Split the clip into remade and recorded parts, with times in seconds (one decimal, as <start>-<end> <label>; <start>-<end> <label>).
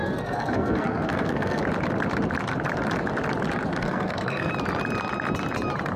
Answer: 0.0-1.6 remade; 1.6-3.7 recorded; 3.7-4.5 remade; 4.5-6.0 recorded